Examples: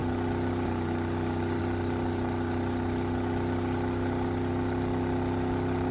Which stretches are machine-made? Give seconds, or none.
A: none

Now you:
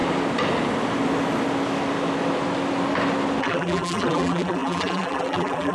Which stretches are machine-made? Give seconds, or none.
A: 3.4-5.7

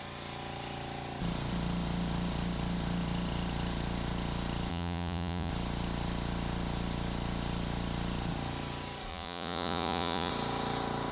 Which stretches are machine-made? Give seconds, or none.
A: 4.7-5.5; 9.1-10.3